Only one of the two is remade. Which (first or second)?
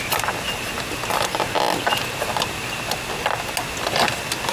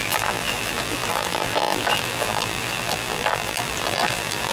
second